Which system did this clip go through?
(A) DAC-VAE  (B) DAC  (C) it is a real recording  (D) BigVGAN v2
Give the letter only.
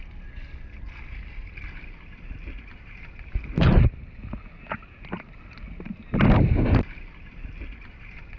C